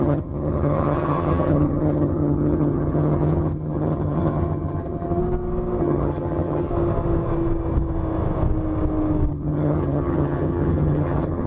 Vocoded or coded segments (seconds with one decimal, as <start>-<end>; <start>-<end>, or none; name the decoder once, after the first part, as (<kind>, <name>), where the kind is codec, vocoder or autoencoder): 0.0-5.2 (vocoder, HiFi-GAN); 5.8-6.7; 9.3-11.5

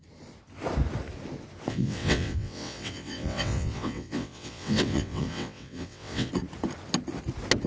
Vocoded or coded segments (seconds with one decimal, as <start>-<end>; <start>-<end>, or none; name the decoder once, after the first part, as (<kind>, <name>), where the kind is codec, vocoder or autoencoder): 1.7-6.3 (vocoder, WaveNeXt)

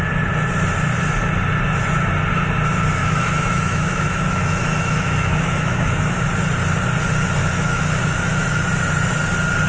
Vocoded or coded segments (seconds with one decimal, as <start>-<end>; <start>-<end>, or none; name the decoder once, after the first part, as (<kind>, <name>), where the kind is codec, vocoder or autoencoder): 3.0-6.3 (autoencoder, DAC-VAE); 7.4-8.7

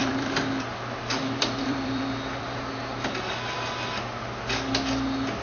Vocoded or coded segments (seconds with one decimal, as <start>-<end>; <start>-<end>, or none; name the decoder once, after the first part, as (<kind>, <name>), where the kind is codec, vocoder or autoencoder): 0.0-2.7 (vocoder, BigVGAN v2)

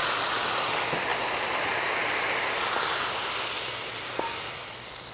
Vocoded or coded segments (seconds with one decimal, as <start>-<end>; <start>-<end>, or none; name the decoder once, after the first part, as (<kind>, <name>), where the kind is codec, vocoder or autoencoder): 0.0-5.1 (vocoder, BigVGAN v2)

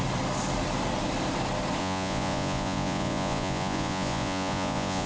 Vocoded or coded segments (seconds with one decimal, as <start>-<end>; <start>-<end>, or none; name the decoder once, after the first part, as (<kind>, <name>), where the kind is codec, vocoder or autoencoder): 1.8-5.1 (vocoder, Vocos)

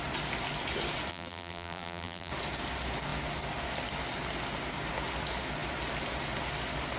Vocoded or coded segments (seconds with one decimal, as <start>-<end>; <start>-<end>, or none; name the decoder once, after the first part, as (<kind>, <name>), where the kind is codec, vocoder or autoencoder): 1.1-2.3 (vocoder, BigVGAN v2)